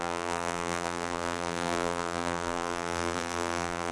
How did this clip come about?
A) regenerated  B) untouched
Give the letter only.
A